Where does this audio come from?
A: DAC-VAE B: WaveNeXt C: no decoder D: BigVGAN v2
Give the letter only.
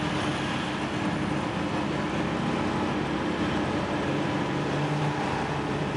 C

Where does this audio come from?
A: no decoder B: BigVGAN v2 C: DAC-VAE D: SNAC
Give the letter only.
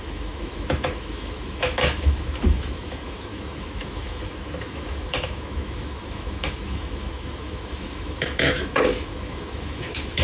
C